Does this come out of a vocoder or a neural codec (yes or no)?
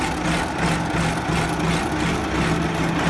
no